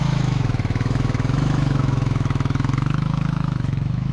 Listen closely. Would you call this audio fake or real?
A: fake